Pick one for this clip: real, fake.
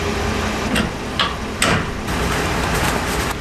real